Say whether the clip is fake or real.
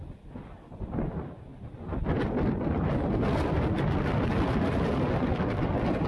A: real